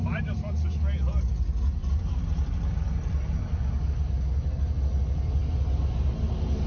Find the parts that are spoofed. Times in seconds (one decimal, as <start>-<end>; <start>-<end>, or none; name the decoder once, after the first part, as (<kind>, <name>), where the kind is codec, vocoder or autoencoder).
1.8-3.7 (vocoder, BigVGAN v2)